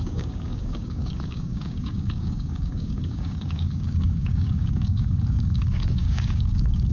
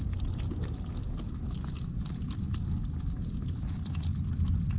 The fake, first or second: first